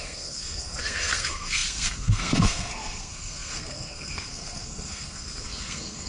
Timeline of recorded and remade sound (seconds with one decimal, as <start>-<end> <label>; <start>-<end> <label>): 0.0-6.1 remade